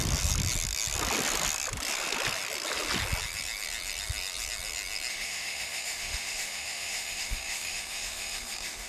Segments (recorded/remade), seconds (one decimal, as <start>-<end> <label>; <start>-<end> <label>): 0.0-5.1 recorded; 5.1-8.9 remade